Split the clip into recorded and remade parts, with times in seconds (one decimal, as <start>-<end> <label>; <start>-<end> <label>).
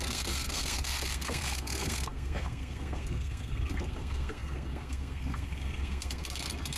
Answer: 0.0-6.8 remade